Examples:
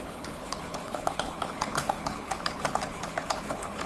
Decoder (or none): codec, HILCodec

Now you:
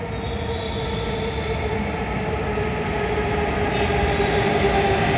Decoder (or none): none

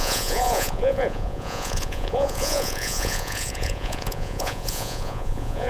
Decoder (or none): vocoder, Vocos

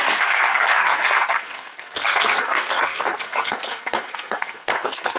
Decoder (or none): codec, SNAC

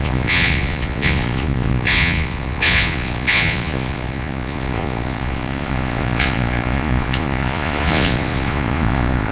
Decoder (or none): vocoder, Vocos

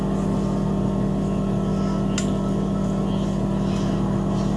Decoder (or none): none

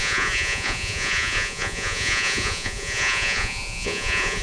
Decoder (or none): vocoder, Vocos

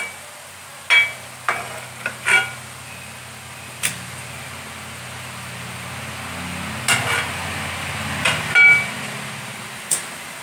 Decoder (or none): none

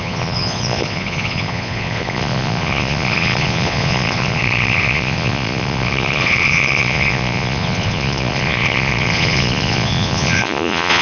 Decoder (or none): vocoder, Vocos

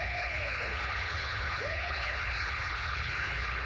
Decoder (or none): codec, HILCodec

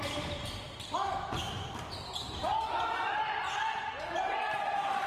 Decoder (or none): vocoder, BigVGAN v2